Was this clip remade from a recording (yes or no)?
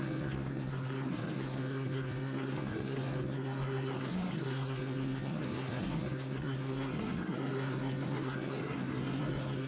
yes